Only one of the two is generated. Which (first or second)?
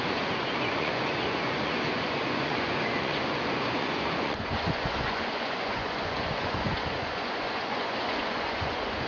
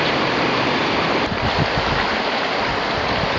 first